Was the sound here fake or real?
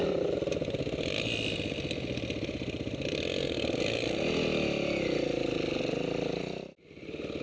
real